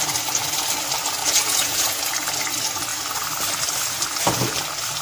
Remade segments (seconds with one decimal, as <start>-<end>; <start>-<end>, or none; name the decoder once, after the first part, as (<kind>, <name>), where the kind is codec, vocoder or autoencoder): 1.2-2.0 (vocoder, Vocos)